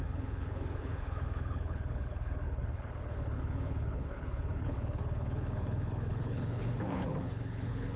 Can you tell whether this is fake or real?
fake